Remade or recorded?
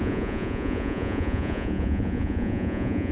remade